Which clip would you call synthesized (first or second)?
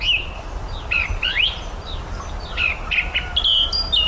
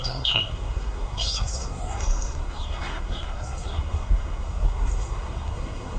second